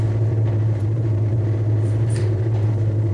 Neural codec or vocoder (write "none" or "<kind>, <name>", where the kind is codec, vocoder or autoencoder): vocoder, BigVGAN v2